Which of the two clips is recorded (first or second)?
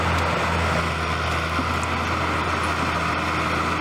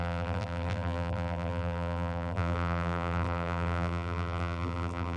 first